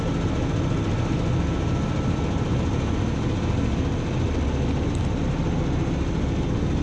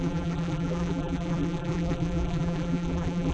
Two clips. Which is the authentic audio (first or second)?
first